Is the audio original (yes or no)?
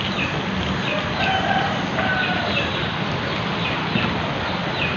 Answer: yes